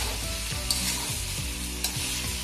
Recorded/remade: recorded